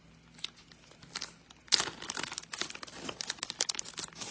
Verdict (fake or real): real